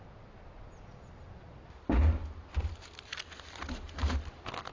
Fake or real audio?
real